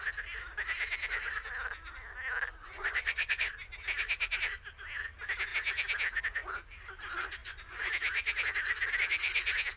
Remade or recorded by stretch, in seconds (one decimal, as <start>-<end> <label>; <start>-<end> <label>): 0.0-2.6 recorded; 2.6-3.5 remade; 3.5-7.4 recorded; 7.4-7.9 remade; 7.9-9.8 recorded